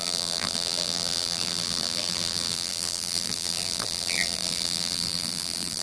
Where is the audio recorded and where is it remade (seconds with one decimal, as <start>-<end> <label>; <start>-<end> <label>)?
0.0-5.8 remade